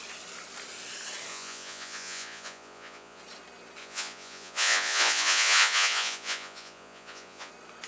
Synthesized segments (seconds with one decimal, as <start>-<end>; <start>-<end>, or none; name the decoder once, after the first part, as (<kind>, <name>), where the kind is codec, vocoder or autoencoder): 1.3-3.2 (vocoder, Vocos); 3.8-7.5